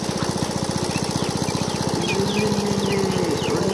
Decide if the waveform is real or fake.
real